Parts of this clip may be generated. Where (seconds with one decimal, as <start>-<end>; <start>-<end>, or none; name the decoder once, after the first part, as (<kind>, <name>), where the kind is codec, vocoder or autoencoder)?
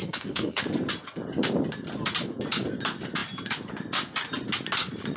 0.0-0.6 (codec, SNAC)